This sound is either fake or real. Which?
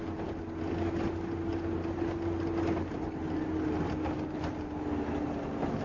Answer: real